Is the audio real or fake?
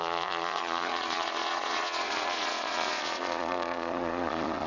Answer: fake